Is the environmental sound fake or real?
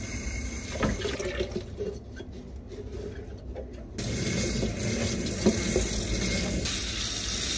real